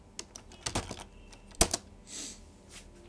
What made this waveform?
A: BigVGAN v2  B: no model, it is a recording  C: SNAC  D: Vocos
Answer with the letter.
B